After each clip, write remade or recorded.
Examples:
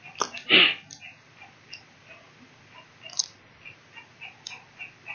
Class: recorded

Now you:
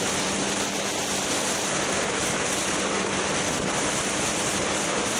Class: recorded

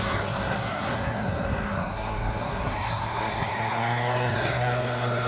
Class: remade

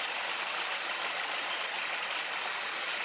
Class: recorded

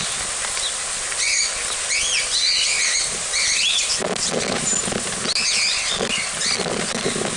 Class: recorded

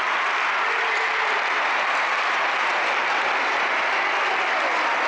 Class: recorded